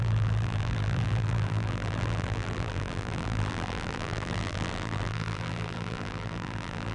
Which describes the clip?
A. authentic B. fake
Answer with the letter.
B